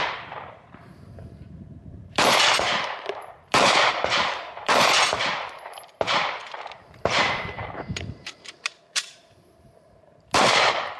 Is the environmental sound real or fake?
fake